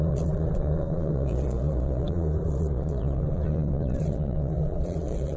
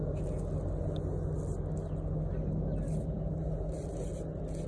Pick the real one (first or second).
second